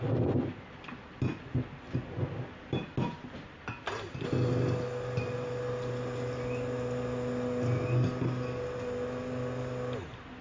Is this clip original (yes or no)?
yes